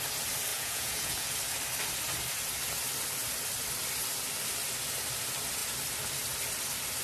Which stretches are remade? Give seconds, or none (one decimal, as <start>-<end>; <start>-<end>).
0.5-1.3